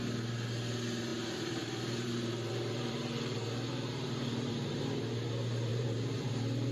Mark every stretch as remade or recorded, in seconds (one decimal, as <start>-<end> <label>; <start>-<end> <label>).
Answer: 0.0-1.1 recorded; 1.1-4.5 remade; 4.5-5.7 recorded; 5.7-6.7 remade